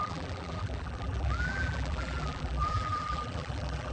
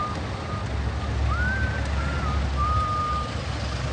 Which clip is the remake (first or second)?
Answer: first